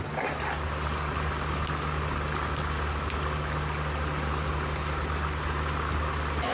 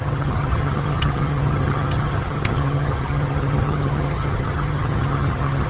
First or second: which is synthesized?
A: second